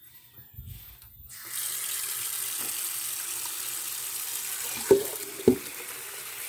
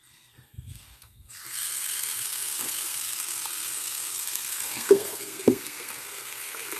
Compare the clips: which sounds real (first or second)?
first